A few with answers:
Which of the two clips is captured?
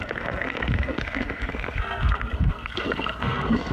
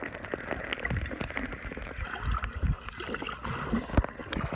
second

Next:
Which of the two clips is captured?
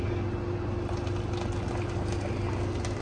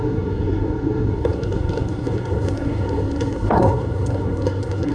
first